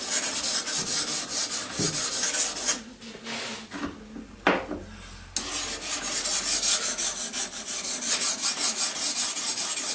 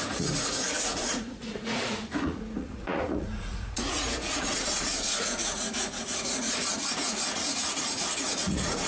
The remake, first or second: second